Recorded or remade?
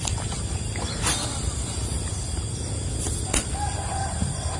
recorded